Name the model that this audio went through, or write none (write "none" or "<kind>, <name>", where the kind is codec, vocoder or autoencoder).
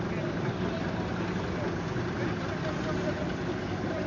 none